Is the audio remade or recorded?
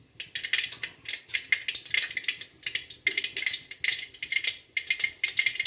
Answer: recorded